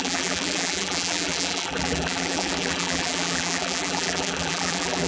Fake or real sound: fake